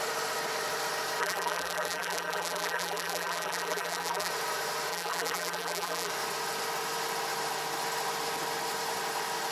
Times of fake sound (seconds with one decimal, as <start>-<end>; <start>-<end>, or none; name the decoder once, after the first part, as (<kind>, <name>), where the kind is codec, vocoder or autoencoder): 1.2-4.3 (vocoder, BigVGAN v2); 4.9-6.1

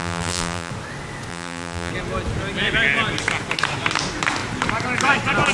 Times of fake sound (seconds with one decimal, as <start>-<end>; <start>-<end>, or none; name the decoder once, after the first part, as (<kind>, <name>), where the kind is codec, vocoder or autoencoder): 0.0-0.7 (vocoder, BigVGAN v2); 1.3-1.9

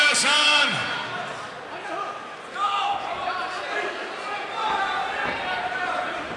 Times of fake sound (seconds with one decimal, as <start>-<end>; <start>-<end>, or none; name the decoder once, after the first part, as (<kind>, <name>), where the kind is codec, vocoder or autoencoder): 0.0-0.8 (vocoder, BigVGAN v2); 2.0-2.9; 5.5-6.4

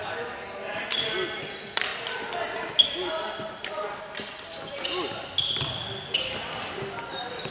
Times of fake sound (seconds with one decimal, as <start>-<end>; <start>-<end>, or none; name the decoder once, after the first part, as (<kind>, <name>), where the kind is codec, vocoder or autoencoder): none

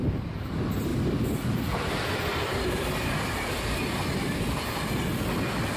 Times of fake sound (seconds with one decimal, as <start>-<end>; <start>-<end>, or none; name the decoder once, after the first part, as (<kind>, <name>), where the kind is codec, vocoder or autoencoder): 0.9-4.4 (vocoder, BigVGAN v2)

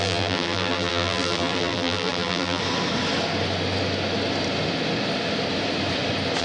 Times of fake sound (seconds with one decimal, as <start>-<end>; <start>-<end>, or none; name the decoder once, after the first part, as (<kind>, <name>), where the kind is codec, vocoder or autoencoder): 0.0-2.6 (vocoder, BigVGAN v2)